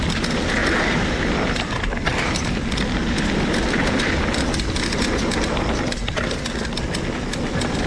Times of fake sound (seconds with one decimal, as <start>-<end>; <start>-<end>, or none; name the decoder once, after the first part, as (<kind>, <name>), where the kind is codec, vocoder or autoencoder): none